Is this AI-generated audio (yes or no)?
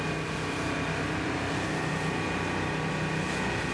no